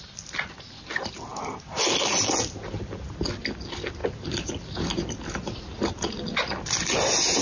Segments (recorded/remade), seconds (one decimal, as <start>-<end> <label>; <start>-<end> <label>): 0.0-4.0 recorded; 4.0-6.8 remade; 6.8-7.4 recorded